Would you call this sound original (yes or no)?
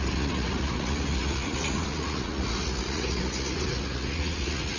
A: no